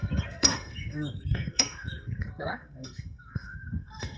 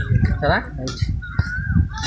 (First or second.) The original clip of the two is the second